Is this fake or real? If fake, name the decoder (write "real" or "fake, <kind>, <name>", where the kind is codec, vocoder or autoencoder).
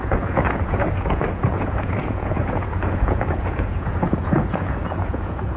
fake, vocoder, Vocos